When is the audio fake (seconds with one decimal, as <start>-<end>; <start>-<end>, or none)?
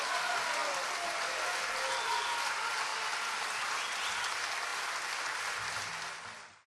none